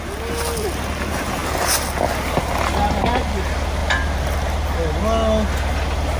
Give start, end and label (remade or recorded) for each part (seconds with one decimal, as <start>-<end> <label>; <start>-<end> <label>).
0.0-6.2 recorded